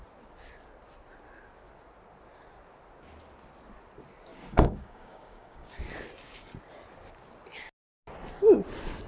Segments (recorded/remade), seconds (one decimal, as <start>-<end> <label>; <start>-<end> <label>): 0.0-4.3 recorded; 4.3-5.8 remade; 5.8-9.1 recorded